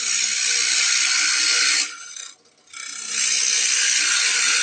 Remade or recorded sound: recorded